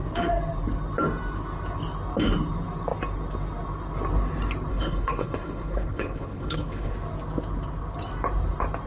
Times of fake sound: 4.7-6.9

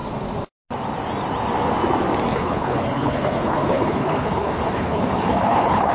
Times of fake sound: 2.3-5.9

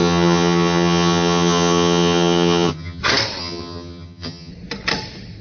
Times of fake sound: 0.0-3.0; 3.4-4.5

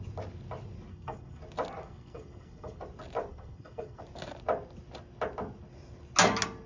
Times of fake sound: 0.9-1.4; 1.8-2.8; 3.3-4.0

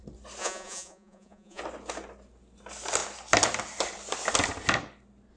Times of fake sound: 0.4-1.6

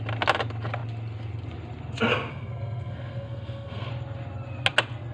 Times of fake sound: 2.3-3.9